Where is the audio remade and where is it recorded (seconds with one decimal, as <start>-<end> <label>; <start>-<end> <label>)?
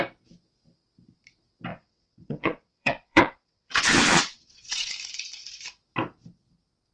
0.0-1.7 recorded; 1.7-4.9 remade; 4.9-6.9 recorded